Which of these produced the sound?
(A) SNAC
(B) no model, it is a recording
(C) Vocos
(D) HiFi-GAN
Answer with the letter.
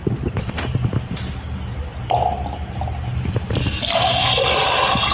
B